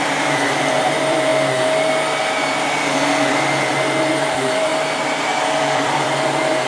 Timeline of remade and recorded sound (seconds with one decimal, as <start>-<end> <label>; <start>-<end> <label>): 0.0-1.3 remade; 1.3-4.1 recorded; 4.1-4.7 remade; 4.7-5.6 recorded; 5.6-6.7 remade